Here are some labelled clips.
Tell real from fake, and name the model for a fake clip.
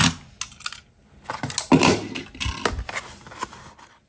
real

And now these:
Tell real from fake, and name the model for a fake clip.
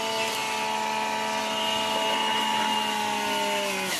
real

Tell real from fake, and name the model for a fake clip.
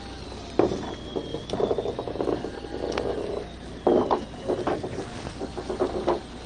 real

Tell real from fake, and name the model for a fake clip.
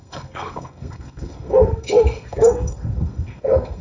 fake, codec, SNAC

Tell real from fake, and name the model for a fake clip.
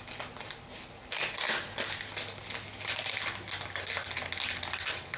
real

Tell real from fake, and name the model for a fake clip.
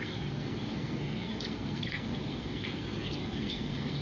fake, codec, SNAC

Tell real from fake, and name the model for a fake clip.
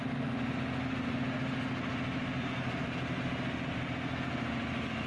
real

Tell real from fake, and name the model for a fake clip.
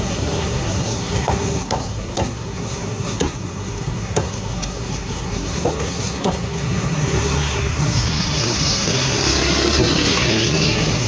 fake, codec, SNAC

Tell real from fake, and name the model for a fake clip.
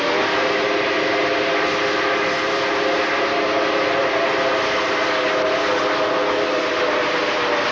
real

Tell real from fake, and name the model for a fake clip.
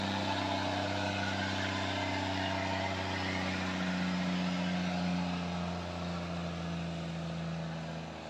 real